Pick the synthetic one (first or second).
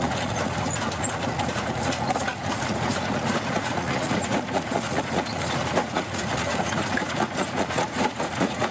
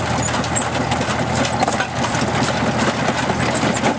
first